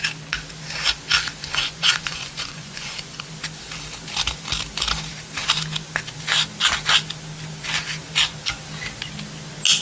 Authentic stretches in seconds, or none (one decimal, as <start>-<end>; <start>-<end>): 0.0-1.4; 3.3-9.8